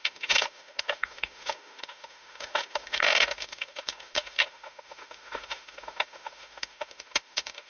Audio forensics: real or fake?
fake